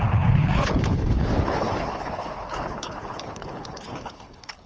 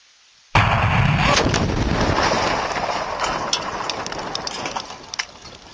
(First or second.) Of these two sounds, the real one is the second